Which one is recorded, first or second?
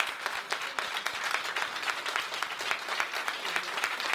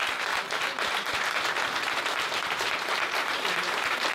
first